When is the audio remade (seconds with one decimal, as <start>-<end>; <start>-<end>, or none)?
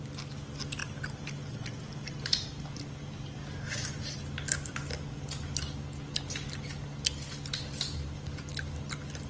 none